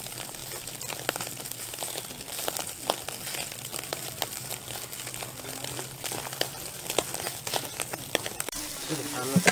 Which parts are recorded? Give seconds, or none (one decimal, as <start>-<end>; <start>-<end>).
0.0-7.9; 8.9-9.5